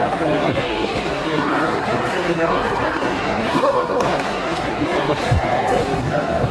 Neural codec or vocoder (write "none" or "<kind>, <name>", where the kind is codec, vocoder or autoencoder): codec, SNAC